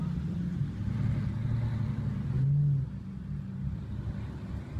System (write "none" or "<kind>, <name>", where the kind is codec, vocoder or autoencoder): none